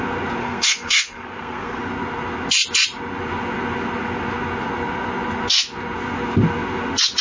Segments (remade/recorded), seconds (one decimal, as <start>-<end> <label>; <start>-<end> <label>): 0.0-0.4 recorded; 0.4-1.8 remade; 1.8-7.2 recorded